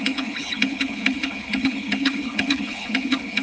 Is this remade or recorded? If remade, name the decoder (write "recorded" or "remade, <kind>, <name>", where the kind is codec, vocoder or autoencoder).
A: remade, codec, HILCodec